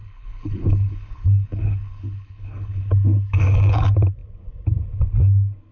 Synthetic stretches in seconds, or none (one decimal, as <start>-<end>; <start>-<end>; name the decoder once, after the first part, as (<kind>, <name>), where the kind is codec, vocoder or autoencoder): 0.0-2.9 (codec, HILCodec)